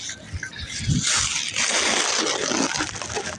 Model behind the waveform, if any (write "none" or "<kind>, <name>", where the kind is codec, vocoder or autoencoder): none